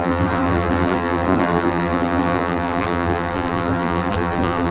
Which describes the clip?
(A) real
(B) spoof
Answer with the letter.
B